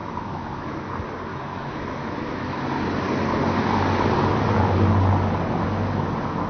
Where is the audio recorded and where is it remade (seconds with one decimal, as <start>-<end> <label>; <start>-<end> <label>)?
0.0-0.9 remade; 0.9-1.3 recorded; 1.3-2.6 remade; 2.6-6.5 recorded